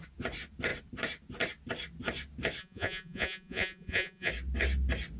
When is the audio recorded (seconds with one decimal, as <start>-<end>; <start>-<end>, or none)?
0.0-2.6; 4.3-5.2